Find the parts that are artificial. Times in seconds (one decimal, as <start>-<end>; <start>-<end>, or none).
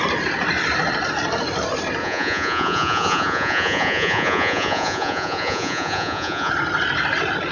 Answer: 2.0-6.5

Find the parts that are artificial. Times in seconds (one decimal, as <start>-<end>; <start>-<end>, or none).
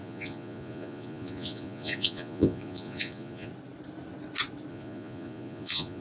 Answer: 0.0-3.5; 4.7-6.0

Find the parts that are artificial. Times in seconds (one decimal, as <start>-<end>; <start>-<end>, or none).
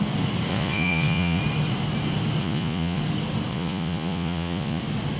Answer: 0.5-1.4; 2.4-3.0; 3.5-4.8